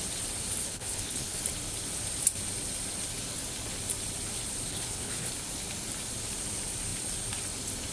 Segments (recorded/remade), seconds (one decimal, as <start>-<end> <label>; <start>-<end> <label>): 0.0-0.6 recorded; 0.6-1.4 remade; 1.4-4.7 recorded; 4.7-5.3 remade; 5.3-7.9 recorded